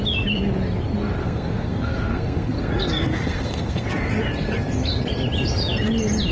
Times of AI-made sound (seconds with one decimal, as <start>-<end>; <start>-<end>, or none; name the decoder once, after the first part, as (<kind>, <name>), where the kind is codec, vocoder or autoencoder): 1.2-2.7 (codec, SNAC); 3.1-3.9